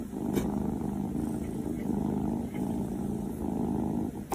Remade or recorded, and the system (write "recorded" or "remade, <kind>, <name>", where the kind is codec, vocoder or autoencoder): recorded